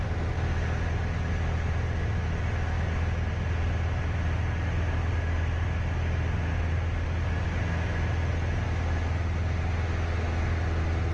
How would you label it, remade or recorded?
recorded